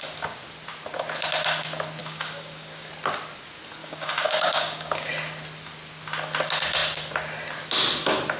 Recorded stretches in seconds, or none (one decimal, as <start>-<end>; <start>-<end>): 0.0-2.0; 2.9-3.8; 5.1-8.4